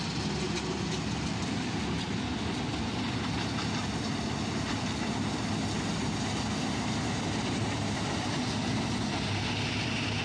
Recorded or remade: recorded